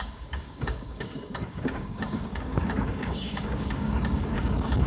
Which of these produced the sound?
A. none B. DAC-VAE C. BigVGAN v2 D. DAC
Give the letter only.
D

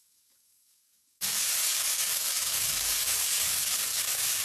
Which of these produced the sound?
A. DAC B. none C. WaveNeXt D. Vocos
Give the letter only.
A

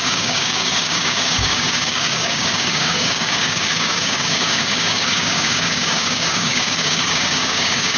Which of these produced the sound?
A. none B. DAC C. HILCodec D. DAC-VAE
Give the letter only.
B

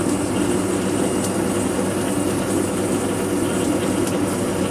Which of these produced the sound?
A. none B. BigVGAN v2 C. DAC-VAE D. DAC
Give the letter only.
A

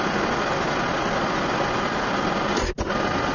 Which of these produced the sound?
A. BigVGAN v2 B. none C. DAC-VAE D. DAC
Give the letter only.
B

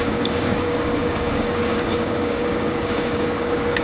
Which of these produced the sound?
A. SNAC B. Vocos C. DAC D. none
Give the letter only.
C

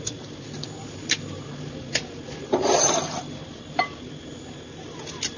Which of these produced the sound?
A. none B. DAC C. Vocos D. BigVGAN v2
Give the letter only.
A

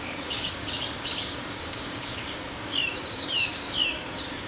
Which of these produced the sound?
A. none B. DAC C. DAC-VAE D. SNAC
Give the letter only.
B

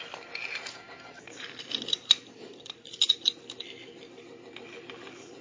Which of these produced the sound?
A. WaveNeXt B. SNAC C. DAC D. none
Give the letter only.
D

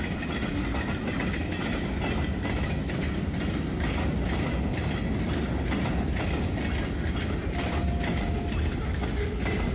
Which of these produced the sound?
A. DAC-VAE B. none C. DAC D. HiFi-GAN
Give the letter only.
B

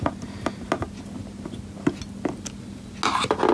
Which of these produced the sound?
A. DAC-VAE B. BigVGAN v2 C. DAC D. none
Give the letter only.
D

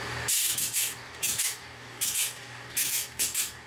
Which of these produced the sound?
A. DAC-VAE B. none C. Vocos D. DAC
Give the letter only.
D